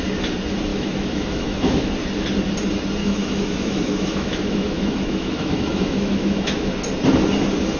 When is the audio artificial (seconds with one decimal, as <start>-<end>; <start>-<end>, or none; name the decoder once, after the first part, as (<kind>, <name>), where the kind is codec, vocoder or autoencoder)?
0.7-1.9 (autoencoder, DAC-VAE); 3.0-6.7